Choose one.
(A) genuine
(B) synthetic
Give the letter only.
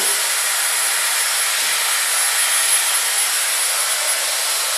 A